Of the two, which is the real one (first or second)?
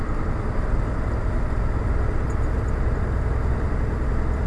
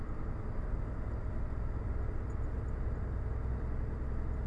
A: second